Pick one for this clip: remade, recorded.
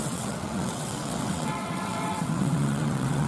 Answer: remade